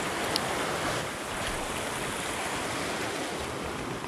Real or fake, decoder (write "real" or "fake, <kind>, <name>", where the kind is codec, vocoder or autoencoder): real